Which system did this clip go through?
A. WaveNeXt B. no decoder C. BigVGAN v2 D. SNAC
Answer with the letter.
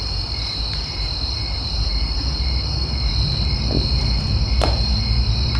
C